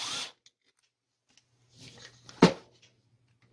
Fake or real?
real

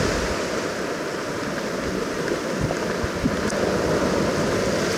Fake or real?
real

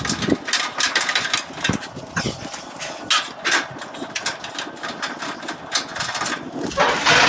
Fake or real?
real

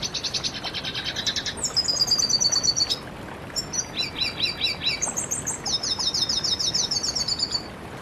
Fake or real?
real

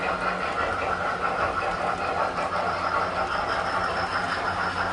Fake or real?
real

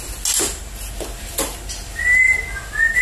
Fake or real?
real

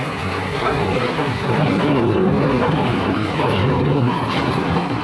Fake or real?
fake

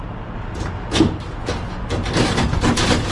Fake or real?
real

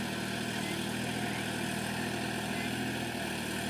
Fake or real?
real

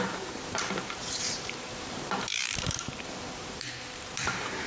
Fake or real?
fake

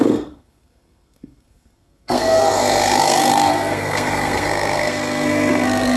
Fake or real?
fake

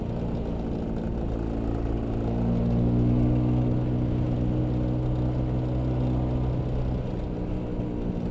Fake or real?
real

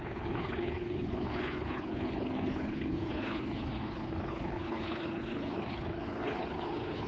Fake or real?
fake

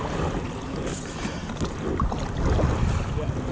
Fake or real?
real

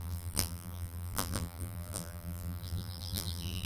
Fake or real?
fake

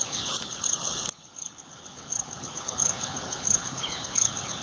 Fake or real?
fake